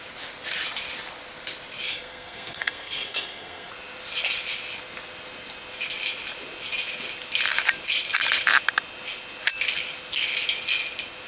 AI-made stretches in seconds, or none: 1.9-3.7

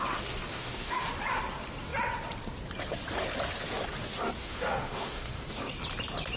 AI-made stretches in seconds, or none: 0.5-1.1; 4.4-5.7

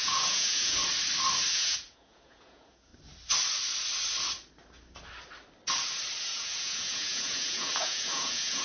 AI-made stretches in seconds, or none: 0.0-0.8; 1.5-2.9; 6.2-8.6

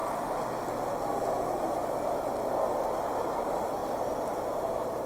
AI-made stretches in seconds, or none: 3.1-3.8; 4.6-5.1

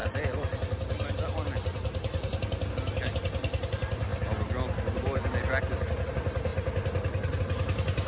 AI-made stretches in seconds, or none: none

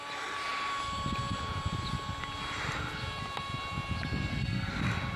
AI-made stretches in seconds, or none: 4.3-4.8

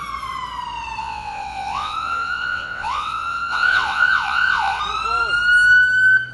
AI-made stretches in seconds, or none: 1.0-4.8